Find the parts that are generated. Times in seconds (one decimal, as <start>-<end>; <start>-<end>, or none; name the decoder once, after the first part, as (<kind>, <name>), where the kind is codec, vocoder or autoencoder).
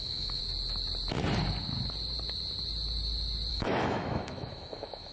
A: 0.0-0.4 (autoencoder, DAC-VAE); 3.5-5.1